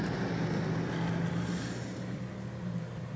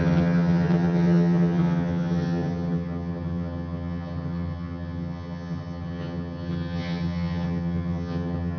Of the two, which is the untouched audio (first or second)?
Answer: first